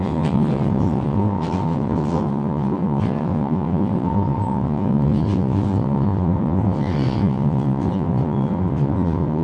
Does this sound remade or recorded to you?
remade